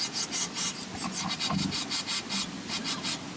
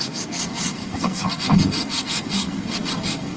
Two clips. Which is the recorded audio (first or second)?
first